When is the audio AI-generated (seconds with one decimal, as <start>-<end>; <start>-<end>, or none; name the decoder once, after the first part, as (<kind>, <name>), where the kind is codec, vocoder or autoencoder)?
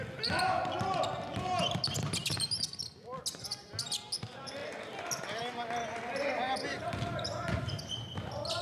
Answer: 6.7-7.8 (vocoder, BigVGAN v2)